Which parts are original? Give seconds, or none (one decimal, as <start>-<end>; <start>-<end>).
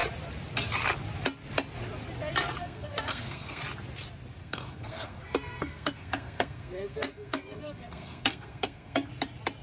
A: 0.0-2.6; 3.6-4.4; 9.1-9.6